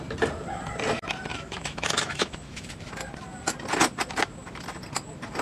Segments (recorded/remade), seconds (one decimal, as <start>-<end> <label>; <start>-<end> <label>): 0.0-1.3 recorded; 1.3-2.7 remade; 2.7-5.4 recorded